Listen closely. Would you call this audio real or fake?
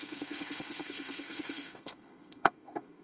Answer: fake